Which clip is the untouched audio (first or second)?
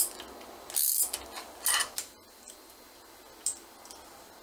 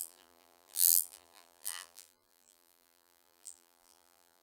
first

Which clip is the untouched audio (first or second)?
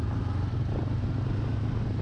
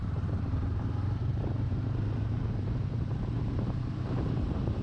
first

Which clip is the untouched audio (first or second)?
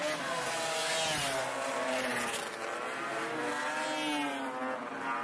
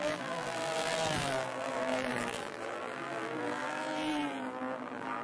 first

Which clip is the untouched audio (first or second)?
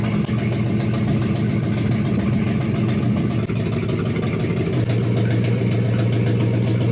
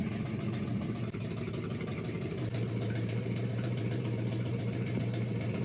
first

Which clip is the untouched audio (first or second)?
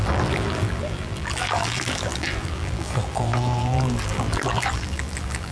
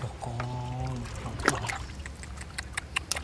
second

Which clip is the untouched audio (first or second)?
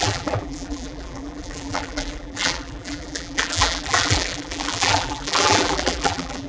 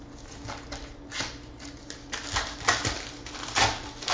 second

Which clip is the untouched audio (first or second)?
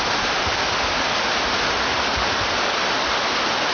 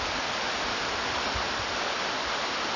first